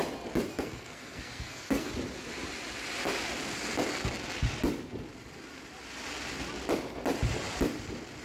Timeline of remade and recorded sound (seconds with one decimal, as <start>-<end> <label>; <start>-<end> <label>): 0.0-0.5 recorded; 0.5-1.9 remade; 1.9-8.2 recorded